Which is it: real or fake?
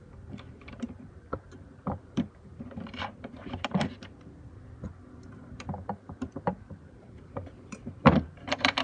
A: fake